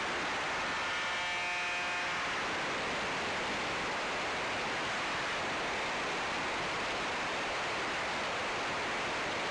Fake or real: real